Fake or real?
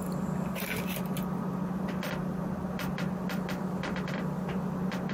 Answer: real